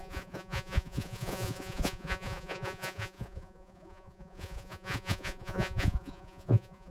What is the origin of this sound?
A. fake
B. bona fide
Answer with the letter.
A